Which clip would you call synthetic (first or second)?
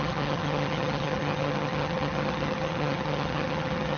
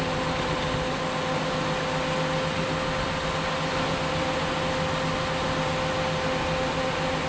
first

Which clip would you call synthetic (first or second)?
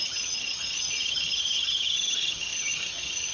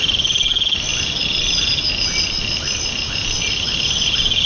first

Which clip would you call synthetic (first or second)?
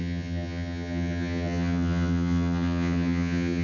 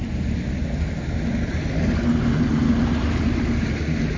first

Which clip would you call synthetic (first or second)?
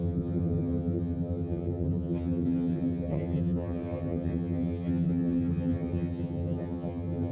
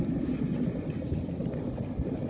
first